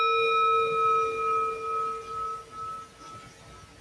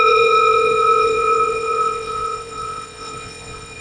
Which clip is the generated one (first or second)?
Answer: second